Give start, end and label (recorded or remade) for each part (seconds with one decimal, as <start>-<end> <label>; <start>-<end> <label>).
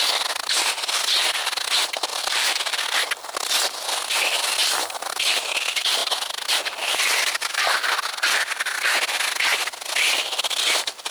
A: 0.0-2.1 recorded; 2.1-2.8 remade; 2.8-11.1 recorded